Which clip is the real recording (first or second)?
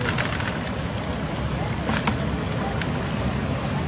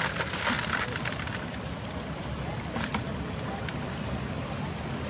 first